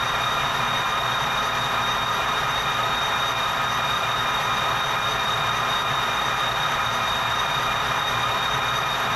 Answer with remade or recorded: recorded